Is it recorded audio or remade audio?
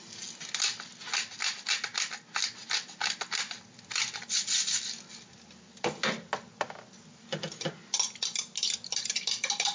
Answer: recorded